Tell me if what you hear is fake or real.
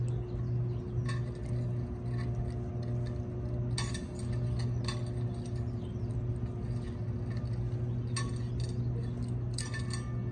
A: real